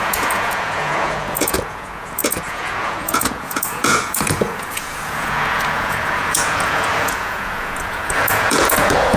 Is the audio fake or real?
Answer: fake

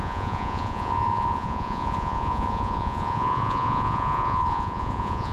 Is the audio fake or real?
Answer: fake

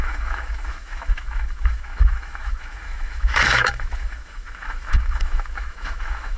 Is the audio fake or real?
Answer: fake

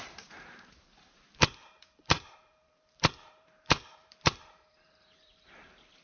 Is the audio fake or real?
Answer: fake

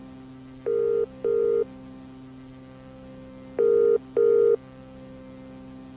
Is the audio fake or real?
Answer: real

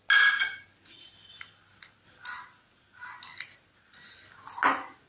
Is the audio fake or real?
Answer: real